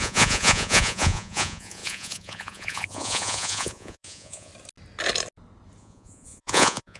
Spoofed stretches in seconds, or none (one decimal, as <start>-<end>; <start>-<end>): 0.0-4.5; 5.8-7.0